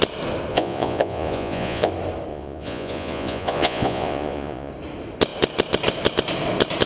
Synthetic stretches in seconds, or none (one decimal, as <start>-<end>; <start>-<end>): 0.5-1.9; 2.3-4.7